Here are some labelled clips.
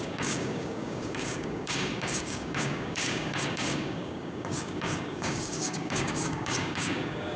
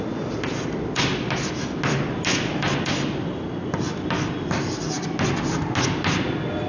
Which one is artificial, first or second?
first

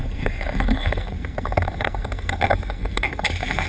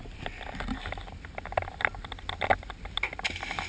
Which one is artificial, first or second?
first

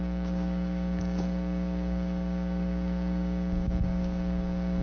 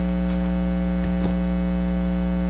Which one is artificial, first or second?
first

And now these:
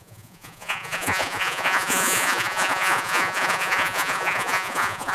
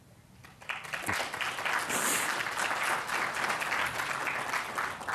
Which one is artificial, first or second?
first